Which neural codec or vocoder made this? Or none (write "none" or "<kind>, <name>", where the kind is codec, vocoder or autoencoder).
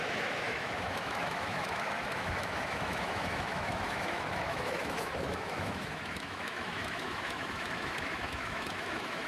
autoencoder, DAC-VAE